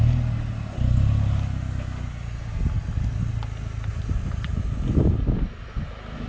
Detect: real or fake real